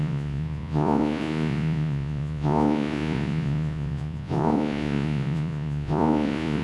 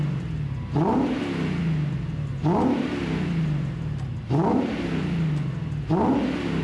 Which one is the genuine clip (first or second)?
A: second